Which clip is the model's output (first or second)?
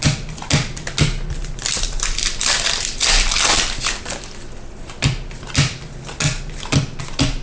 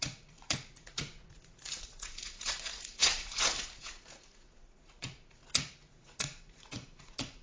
second